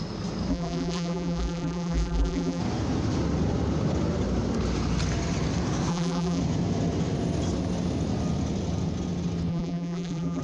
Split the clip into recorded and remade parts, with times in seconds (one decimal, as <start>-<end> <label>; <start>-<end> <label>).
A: 0.0-0.5 recorded; 0.5-2.6 remade; 2.6-5.9 recorded; 5.9-6.4 remade; 6.4-9.5 recorded; 9.5-10.4 remade